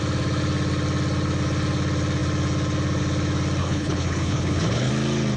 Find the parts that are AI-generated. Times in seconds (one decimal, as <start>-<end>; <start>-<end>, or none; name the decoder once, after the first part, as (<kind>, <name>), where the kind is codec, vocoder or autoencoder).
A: 3.6-4.9 (codec, HILCodec)